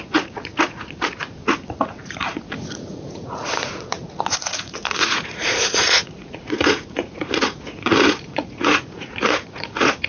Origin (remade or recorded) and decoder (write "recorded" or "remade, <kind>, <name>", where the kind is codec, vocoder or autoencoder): remade, vocoder, Vocos